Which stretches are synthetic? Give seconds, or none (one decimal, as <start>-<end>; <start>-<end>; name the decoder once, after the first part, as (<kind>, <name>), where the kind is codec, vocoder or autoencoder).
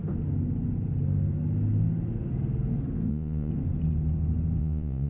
3.1-3.5 (vocoder, Vocos); 4.6-5.1